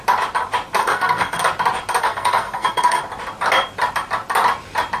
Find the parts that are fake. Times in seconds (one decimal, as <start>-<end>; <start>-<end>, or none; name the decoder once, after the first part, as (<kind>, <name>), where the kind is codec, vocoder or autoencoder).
0.8-1.4 (codec, SNAC); 2.0-3.0